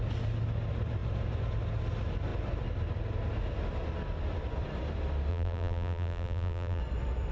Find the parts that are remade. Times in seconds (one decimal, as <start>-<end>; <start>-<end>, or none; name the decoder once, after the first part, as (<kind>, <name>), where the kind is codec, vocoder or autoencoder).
5.3-6.8 (vocoder, BigVGAN v2)